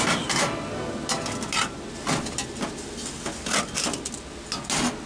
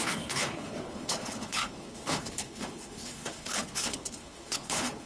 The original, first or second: first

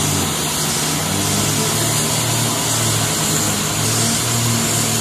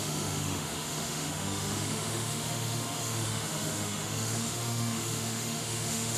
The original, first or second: first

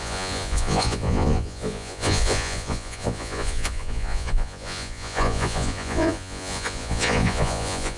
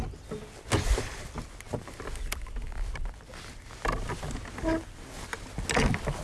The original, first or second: second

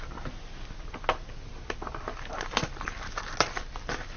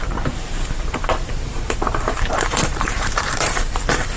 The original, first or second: first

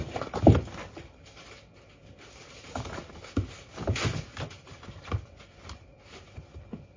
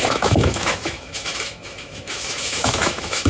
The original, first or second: first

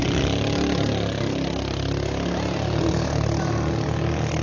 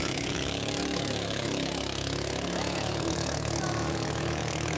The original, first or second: first